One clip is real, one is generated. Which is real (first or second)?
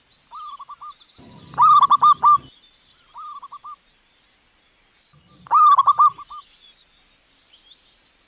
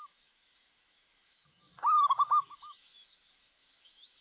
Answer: first